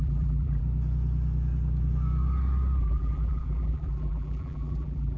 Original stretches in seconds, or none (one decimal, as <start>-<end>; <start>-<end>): 0.6-2.8